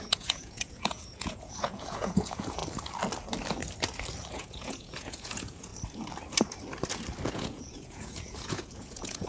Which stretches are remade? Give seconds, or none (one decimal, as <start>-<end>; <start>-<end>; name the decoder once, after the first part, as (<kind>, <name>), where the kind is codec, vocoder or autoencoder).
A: 0.0-2.6 (vocoder, Vocos); 4.3-5.7; 7.3-9.3